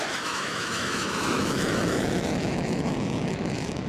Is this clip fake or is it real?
fake